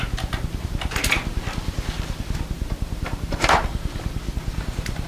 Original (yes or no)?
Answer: yes